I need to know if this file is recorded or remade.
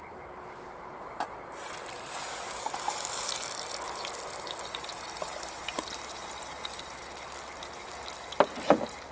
recorded